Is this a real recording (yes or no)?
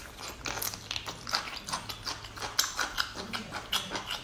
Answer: yes